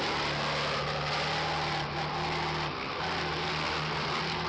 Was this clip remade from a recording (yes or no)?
no